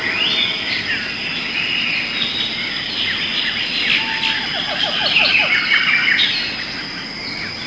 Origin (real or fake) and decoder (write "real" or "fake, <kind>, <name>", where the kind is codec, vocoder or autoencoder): real